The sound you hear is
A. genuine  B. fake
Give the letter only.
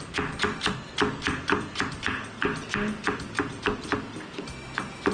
A